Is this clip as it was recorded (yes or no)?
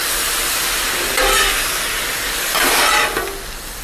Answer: yes